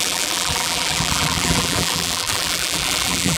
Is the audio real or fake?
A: fake